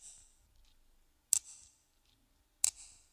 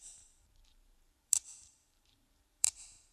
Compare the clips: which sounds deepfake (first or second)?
second